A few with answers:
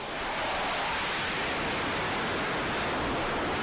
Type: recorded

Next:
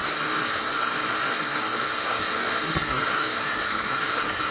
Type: remade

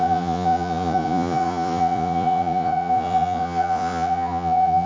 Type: remade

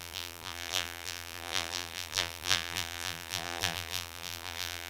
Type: remade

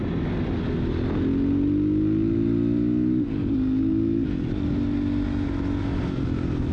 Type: recorded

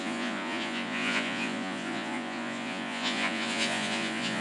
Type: remade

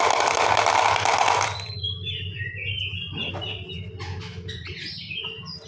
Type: recorded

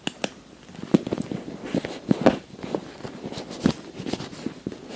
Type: recorded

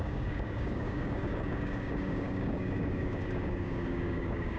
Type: remade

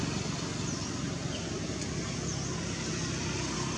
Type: recorded